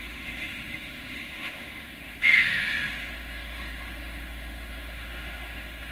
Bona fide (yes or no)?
no